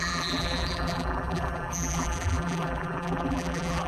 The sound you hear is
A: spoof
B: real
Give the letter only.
A